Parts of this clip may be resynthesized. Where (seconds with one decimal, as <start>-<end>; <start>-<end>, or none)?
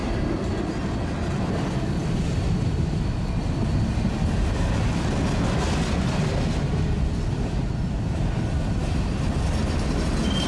0.0-0.5